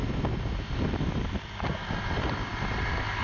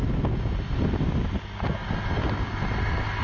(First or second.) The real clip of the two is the second